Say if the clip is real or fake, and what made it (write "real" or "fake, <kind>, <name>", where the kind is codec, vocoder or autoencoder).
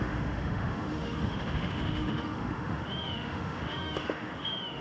fake, autoencoder, DAC-VAE